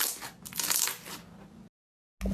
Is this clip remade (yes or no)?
no